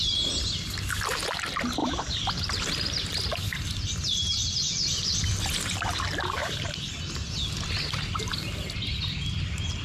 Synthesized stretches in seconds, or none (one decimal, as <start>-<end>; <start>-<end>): 1.8-3.2; 4.2-5.1; 6.4-7.0